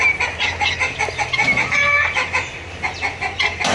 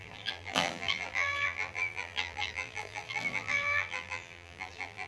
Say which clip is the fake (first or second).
second